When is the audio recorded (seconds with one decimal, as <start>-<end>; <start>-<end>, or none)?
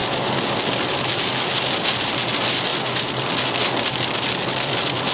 0.0-2.7; 3.4-5.1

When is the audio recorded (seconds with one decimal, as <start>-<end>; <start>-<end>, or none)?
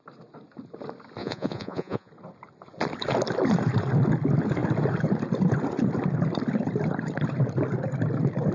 0.0-1.2; 2.1-8.5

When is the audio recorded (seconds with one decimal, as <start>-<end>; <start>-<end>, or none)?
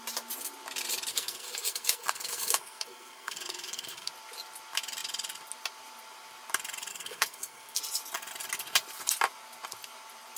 0.0-1.1; 4.1-6.9; 7.8-10.4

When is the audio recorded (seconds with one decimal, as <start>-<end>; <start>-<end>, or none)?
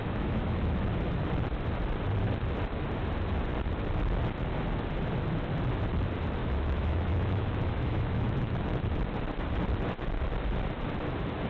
0.6-6.4; 8.8-11.5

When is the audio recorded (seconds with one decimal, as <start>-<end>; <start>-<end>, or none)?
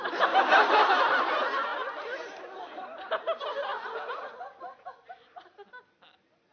0.0-1.7; 3.1-6.5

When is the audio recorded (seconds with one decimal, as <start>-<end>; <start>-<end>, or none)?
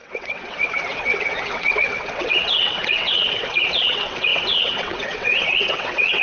none